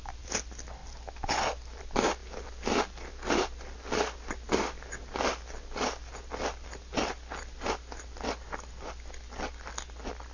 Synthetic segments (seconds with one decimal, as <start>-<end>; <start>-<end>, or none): none